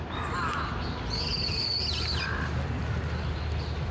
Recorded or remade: recorded